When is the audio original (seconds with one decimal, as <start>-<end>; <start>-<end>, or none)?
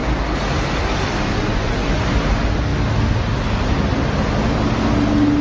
0.0-1.4; 2.0-5.4